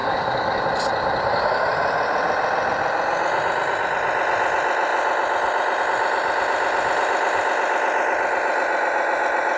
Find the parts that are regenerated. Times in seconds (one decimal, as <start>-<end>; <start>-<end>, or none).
0.0-0.6

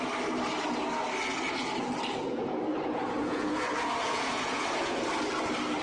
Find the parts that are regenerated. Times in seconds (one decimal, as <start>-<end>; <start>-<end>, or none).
2.7-5.0

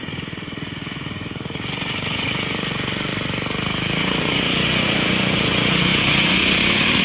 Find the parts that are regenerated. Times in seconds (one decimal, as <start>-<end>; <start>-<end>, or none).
0.0-3.1; 4.0-7.0

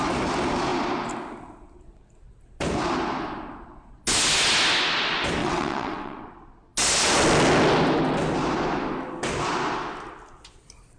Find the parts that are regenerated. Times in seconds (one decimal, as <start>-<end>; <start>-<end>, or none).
5.4-6.3

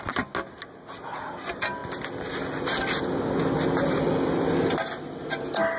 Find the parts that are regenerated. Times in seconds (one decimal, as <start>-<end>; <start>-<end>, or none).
none

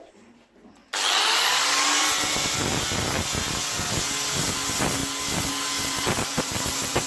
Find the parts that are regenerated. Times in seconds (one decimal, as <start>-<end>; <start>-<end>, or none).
none